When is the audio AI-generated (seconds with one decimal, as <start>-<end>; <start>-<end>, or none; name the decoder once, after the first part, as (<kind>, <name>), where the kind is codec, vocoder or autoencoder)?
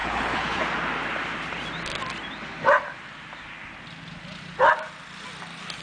0.0-0.6 (codec, HILCodec)